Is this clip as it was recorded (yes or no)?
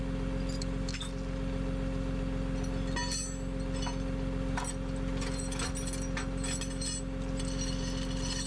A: yes